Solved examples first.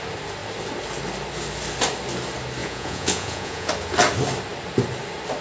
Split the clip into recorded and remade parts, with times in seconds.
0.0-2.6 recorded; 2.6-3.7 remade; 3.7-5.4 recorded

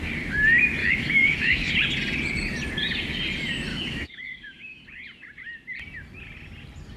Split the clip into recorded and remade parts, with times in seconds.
0.0-0.8 recorded; 0.8-1.7 remade; 1.7-3.7 recorded; 3.7-4.8 remade; 4.8-7.0 recorded

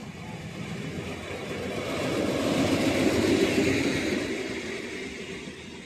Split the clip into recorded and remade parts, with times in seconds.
0.0-5.9 recorded

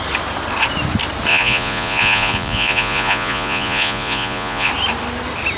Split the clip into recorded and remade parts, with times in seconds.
0.0-1.3 recorded; 1.3-4.7 remade; 4.7-5.6 recorded

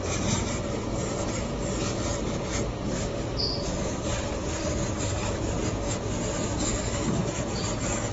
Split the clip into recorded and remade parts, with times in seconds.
0.0-8.1 recorded

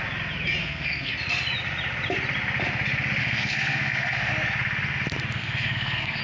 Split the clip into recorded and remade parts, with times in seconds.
0.0-0.6 recorded; 0.6-1.1 remade; 1.1-3.2 recorded; 3.2-4.3 remade; 4.3-5.4 recorded; 5.4-6.2 remade